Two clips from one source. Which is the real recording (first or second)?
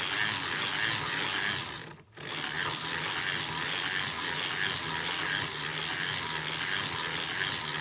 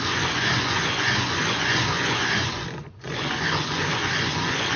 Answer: first